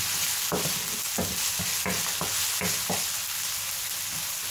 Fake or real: real